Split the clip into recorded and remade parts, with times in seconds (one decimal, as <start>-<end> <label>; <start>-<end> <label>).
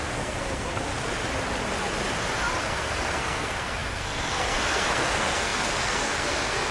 0.0-0.9 remade; 0.9-2.6 recorded; 2.6-6.7 remade